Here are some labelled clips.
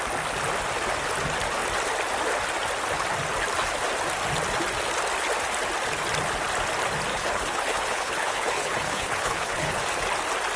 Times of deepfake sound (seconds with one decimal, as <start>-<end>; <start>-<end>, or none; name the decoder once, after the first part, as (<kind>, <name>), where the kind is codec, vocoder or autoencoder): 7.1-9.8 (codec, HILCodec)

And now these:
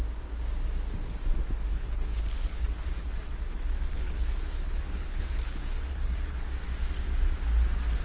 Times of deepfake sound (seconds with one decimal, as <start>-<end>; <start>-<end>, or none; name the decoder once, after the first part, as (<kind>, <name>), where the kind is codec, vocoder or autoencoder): 1.7-6.5 (codec, HILCodec)

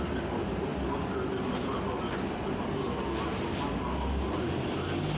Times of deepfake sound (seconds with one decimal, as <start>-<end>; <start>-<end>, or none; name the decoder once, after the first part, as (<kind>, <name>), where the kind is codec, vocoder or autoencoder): none

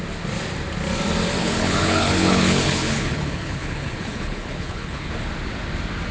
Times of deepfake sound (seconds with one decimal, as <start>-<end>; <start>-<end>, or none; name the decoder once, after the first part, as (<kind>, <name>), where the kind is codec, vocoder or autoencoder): 1.4-5.1 (codec, HILCodec)

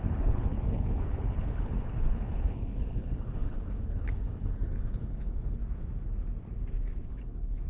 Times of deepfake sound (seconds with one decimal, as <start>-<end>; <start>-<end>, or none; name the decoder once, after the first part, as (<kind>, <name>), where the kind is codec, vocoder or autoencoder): 0.0-5.6 (codec, HILCodec); 7.0-7.7